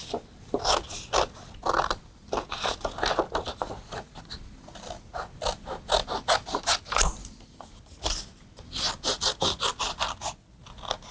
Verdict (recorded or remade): recorded